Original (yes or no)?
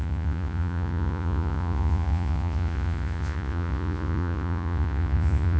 no